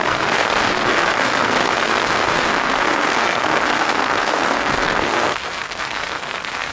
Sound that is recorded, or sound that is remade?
remade